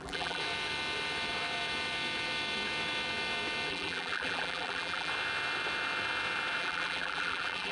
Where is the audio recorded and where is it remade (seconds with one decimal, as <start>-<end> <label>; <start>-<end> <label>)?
0.0-0.4 remade; 0.4-3.7 recorded; 3.7-5.1 remade; 5.1-6.6 recorded; 6.6-7.7 remade